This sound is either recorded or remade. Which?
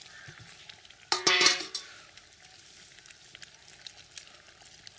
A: recorded